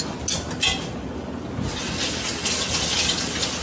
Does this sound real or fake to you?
real